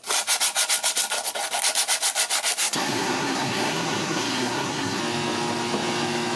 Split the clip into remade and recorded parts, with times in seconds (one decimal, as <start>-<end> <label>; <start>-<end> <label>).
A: 0.0-2.6 recorded; 2.6-5.0 remade; 5.0-6.4 recorded